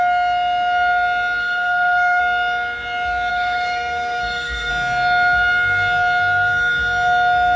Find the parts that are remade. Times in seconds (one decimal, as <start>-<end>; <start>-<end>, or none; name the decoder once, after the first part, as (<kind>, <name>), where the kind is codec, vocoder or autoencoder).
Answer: 1.4-2.2 (codec, SNAC); 3.3-4.7